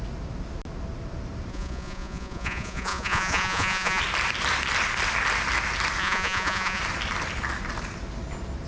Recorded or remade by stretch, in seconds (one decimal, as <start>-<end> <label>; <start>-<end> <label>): 0.0-1.5 recorded; 1.5-4.0 remade; 4.0-6.0 recorded; 6.0-6.8 remade; 6.8-8.7 recorded